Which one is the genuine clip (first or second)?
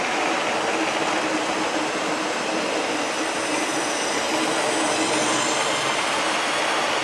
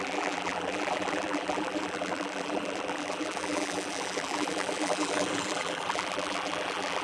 first